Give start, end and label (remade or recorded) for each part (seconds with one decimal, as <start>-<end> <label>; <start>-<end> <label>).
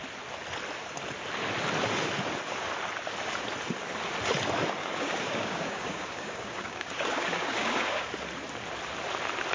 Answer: 0.0-4.8 recorded; 4.8-8.1 remade; 8.1-9.5 recorded